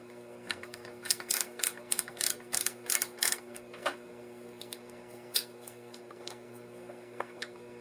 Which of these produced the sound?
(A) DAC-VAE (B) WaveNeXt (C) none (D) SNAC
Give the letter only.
D